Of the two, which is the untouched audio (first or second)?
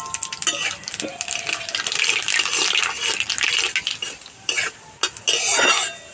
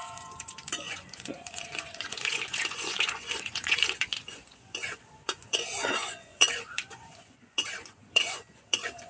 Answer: first